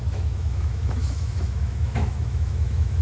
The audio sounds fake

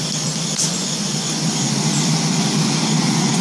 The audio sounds fake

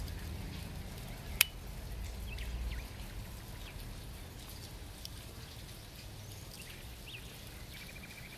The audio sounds real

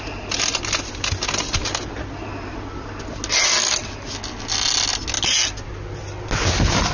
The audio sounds real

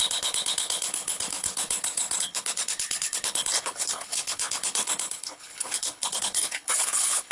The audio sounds fake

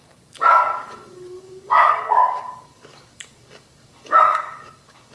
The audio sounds fake